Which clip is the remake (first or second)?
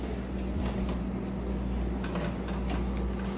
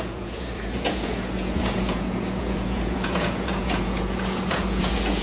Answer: second